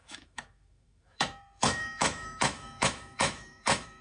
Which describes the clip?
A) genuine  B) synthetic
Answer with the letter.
B